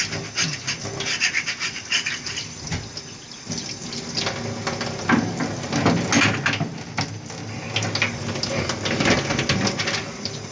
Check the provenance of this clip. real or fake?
real